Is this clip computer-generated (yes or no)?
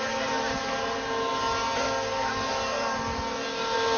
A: no